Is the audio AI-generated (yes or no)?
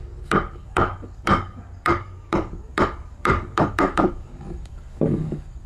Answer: yes